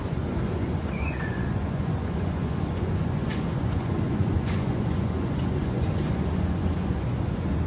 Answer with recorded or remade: remade